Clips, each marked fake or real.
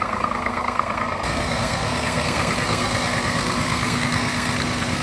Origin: fake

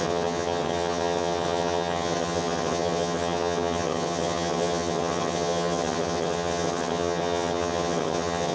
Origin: fake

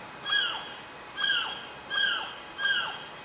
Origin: real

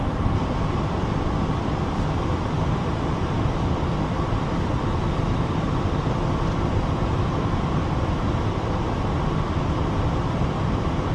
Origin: fake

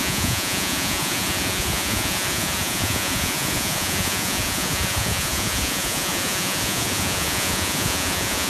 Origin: fake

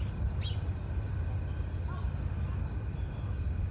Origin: real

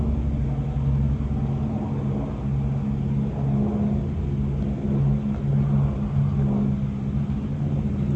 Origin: real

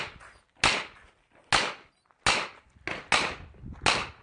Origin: real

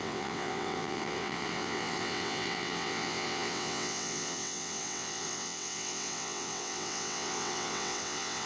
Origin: fake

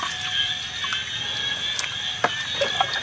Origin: real